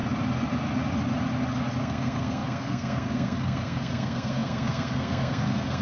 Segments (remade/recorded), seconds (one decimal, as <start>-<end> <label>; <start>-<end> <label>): 0.0-1.8 recorded; 1.8-5.8 remade